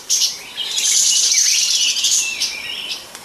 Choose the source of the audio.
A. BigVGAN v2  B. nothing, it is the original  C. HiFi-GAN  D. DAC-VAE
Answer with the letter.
B